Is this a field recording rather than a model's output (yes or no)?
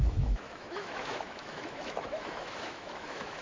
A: no